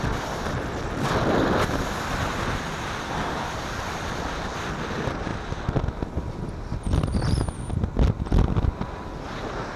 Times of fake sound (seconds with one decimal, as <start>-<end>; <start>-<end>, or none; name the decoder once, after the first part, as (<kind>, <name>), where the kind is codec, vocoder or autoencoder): none

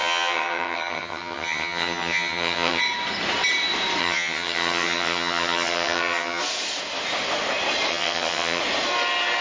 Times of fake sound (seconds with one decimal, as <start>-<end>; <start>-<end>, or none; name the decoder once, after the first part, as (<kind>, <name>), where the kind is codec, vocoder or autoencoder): 0.0-2.8 (vocoder, HiFi-GAN); 4.0-6.4; 7.9-8.6

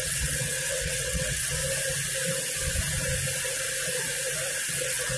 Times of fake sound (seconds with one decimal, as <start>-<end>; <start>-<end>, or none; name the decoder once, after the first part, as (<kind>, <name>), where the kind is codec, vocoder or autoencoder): 0.0-1.6 (vocoder, WaveNeXt); 4.7-5.2

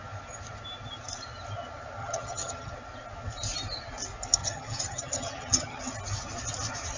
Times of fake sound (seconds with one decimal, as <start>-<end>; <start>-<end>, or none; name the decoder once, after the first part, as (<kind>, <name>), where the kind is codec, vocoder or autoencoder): 2.0-2.7 (vocoder, HiFi-GAN); 4.4-5.8

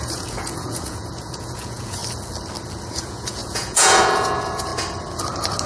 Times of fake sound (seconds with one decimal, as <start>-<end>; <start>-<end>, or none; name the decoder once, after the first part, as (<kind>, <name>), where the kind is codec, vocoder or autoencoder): 0.0-2.0 (vocoder, Vocos); 2.9-4.7

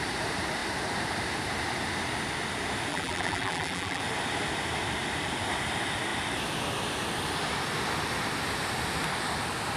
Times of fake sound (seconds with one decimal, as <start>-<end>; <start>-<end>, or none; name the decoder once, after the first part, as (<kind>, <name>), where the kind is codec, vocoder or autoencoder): 2.9-4.0 (vocoder, BigVGAN v2)

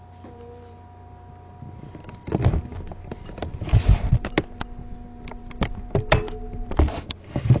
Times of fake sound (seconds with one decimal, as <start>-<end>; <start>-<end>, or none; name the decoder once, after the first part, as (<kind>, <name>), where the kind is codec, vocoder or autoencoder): none

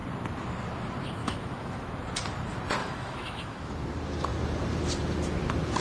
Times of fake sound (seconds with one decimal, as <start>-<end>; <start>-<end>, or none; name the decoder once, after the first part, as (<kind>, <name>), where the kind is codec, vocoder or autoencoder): 1.2-2.0 (autoencoder, DAC-VAE); 2.8-3.7